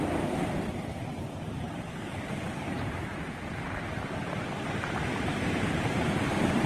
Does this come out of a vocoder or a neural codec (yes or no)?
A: yes